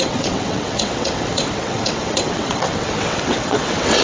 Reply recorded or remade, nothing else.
remade